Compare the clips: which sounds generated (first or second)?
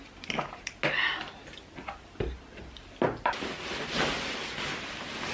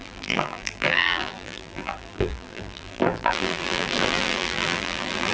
second